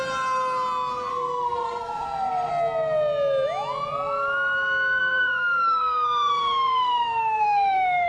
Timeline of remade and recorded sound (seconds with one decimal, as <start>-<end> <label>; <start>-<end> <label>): 0.0-1.1 recorded; 1.1-2.5 remade; 2.5-5.0 recorded; 5.0-8.1 remade